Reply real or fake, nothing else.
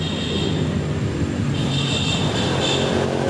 real